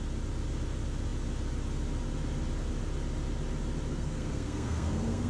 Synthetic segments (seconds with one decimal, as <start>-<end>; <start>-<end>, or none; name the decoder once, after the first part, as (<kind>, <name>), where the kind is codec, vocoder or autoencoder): 3.9-5.3 (codec, SNAC)